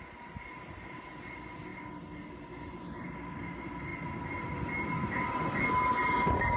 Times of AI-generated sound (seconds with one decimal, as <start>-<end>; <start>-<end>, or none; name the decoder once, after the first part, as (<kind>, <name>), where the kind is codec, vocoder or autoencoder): none

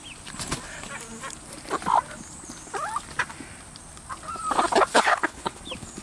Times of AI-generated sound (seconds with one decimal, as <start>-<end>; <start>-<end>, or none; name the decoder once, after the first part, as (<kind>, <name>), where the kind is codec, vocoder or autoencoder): 4.9-5.6 (codec, HILCodec)

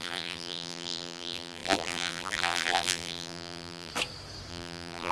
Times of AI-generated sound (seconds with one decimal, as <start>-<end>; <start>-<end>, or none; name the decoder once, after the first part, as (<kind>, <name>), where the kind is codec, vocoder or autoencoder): 0.0-3.9 (vocoder, BigVGAN v2); 4.5-5.1

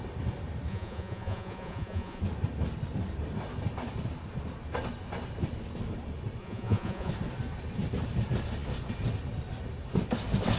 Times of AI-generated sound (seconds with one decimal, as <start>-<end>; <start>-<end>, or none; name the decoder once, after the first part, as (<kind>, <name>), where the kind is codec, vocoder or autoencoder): 0.7-2.2 (vocoder, Vocos); 6.4-7.1

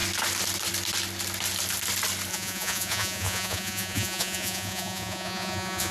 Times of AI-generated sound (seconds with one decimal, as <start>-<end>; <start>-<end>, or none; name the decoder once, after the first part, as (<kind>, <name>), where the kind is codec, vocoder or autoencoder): 2.3-5.9 (vocoder, Vocos)